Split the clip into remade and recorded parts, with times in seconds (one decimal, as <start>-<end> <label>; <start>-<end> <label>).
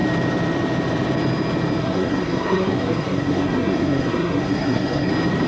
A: 0.0-1.8 recorded; 1.8-5.1 remade; 5.1-5.5 recorded